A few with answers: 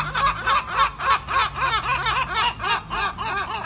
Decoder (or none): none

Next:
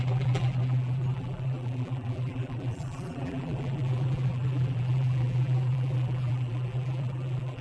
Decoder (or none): vocoder, BigVGAN v2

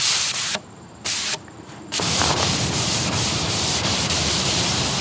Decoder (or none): vocoder, BigVGAN v2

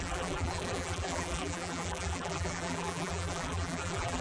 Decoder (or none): vocoder, BigVGAN v2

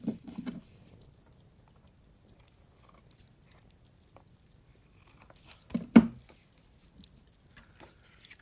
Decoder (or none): none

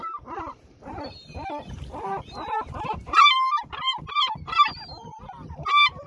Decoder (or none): vocoder, BigVGAN v2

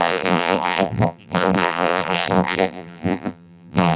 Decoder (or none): vocoder, BigVGAN v2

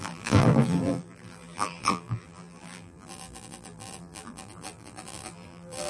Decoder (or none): vocoder, BigVGAN v2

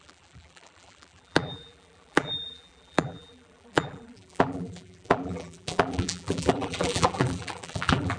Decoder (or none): vocoder, BigVGAN v2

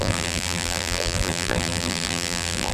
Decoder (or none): vocoder, BigVGAN v2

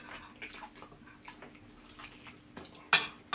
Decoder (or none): none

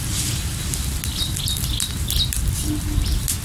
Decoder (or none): none